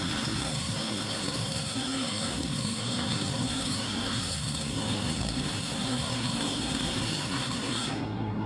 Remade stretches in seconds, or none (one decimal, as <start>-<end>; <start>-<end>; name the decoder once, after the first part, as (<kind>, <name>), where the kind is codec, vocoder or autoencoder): 0.0-8.5 (codec, SNAC)